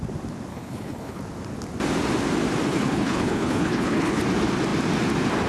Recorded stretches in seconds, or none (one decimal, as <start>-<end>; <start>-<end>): 0.0-0.5; 1.2-2.7; 4.2-5.5